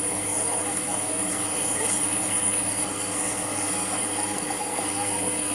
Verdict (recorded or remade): remade